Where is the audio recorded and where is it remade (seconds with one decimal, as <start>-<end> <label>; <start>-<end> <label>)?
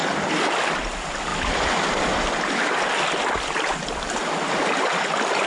0.0-5.5 recorded